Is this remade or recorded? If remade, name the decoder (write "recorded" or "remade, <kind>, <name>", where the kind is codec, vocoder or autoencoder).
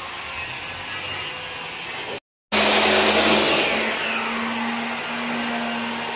recorded